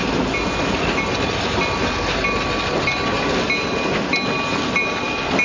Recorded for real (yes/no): yes